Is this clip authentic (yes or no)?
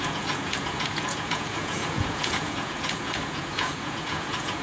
no